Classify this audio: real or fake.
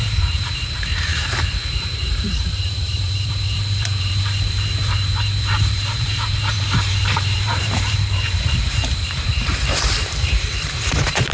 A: fake